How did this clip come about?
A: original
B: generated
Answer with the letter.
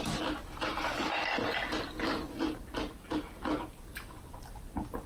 A